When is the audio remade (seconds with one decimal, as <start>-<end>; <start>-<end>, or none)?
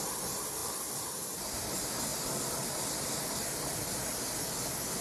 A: 0.6-1.5; 2.1-3.8